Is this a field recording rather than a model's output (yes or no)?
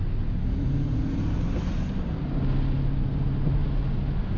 yes